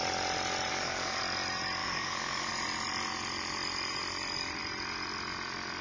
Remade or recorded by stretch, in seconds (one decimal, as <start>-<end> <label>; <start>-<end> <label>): 0.0-0.7 recorded; 0.7-1.2 remade; 1.2-1.8 recorded; 1.8-2.5 remade; 2.5-5.8 recorded